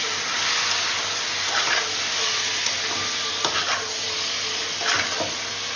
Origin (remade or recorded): recorded